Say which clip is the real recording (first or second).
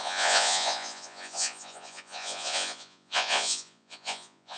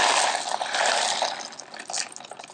second